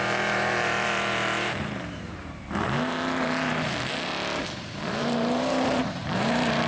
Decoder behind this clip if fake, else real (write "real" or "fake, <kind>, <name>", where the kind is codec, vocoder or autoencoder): fake, vocoder, BigVGAN v2